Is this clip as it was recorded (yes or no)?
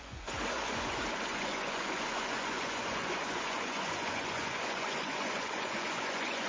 no